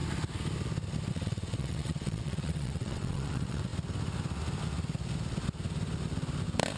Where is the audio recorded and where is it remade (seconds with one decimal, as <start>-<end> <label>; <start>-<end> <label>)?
0.0-1.1 recorded; 1.1-3.7 remade; 3.7-6.8 recorded